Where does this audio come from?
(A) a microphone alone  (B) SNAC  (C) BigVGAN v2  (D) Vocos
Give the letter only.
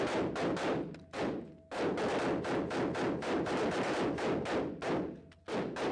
A